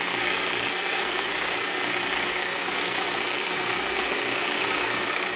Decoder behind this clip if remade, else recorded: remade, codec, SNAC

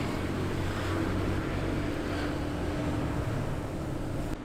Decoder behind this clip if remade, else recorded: recorded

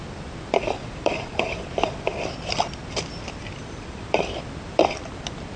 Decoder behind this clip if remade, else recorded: remade, vocoder, BigVGAN v2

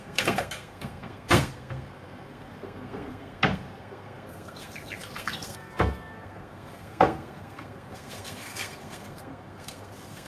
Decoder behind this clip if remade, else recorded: remade, codec, SNAC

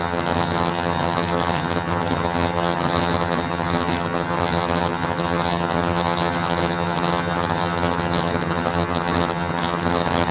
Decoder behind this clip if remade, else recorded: remade, vocoder, HiFi-GAN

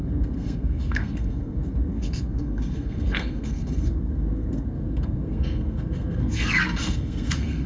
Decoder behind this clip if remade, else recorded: remade, codec, SNAC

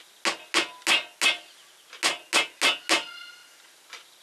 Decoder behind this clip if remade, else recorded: recorded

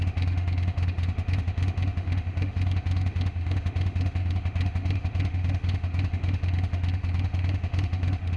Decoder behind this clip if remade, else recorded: remade, autoencoder, DAC-VAE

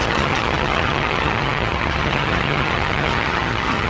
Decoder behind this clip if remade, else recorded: remade, vocoder, HiFi-GAN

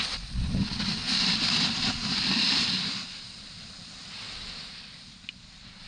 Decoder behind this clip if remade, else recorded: remade, vocoder, BigVGAN v2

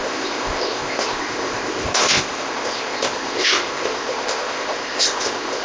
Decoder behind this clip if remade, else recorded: remade, codec, ZipCodec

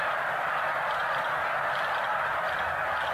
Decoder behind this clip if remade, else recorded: recorded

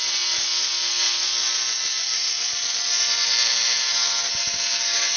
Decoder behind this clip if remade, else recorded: recorded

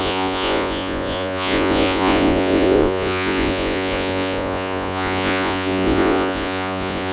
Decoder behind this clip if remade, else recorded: remade, vocoder, Vocos